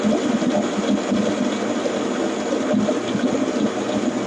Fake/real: real